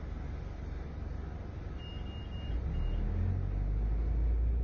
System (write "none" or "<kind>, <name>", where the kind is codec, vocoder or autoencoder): none